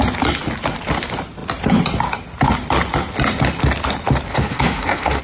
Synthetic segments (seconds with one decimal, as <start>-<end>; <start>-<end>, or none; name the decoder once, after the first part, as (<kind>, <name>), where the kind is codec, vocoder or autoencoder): 4.3-5.2 (autoencoder, DAC-VAE)